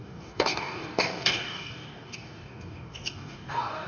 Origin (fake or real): fake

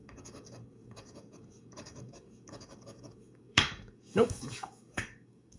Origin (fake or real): fake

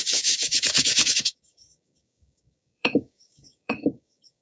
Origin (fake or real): fake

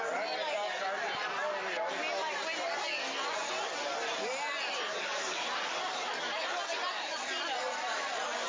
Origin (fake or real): real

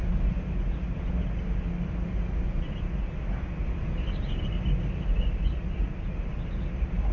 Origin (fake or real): real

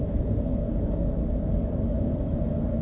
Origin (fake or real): fake